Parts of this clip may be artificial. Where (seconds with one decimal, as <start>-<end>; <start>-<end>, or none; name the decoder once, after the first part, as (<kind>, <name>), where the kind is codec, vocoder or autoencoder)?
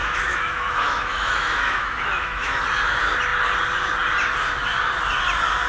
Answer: 0.0-2.6 (autoencoder, DAC-VAE)